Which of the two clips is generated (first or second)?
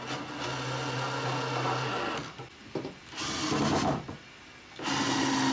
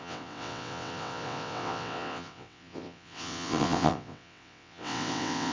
second